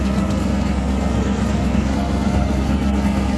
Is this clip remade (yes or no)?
yes